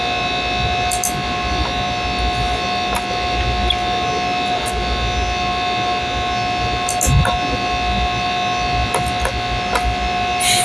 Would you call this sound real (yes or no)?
yes